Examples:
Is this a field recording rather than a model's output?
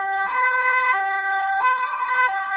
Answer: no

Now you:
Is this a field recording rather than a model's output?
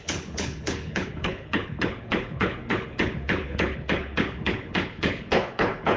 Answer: no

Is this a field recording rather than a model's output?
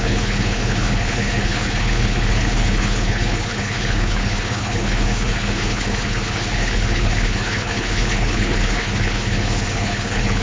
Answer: no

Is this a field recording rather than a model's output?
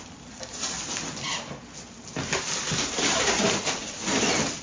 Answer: yes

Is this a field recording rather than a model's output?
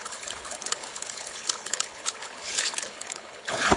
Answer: no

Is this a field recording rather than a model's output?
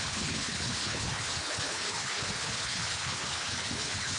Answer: no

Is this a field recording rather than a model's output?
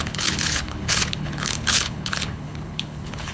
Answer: no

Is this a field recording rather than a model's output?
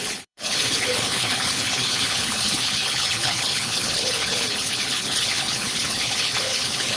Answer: no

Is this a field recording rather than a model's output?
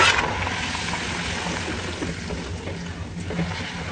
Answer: yes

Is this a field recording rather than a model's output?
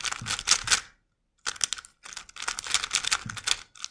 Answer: yes